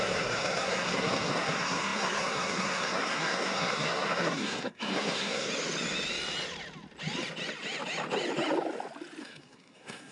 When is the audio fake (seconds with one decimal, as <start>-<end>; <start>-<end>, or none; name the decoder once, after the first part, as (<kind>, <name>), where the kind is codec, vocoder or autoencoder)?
0.0-5.5 (codec, SNAC); 9.2-10.1